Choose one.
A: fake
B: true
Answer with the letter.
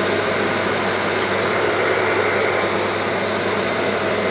B